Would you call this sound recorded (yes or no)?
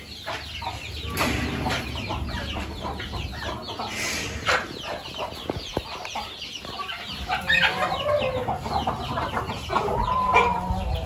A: yes